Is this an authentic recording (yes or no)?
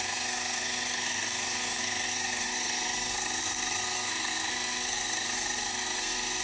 no